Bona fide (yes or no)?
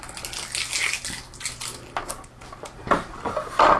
yes